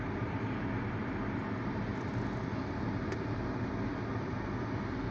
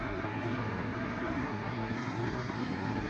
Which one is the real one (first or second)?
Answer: first